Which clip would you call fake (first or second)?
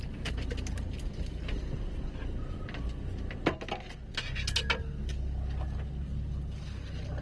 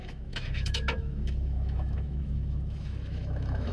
second